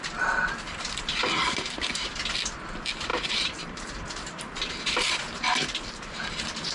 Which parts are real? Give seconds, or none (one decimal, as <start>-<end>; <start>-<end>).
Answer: 0.0-1.4; 1.9-3.1; 4.7-6.7